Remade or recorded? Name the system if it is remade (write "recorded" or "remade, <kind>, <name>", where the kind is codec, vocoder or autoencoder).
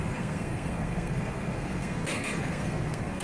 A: remade, codec, SNAC